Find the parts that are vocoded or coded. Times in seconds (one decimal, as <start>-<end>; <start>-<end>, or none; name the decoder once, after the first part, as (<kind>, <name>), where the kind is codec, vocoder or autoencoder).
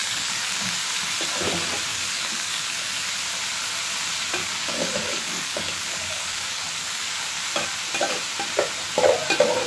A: 0.0-0.7 (codec, DAC); 1.9-3.1; 4.4-7.4